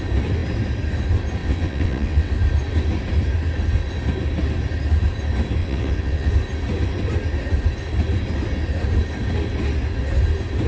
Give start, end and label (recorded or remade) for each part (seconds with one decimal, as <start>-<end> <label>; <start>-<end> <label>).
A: 0.0-1.4 recorded; 1.4-2.3 remade; 2.3-5.6 recorded; 5.6-6.3 remade; 6.3-10.7 recorded